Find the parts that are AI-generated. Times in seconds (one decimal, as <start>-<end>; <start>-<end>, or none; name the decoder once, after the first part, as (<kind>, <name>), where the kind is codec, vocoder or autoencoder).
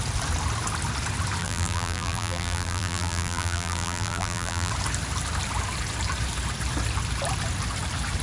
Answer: 1.4-4.7 (vocoder, BigVGAN v2)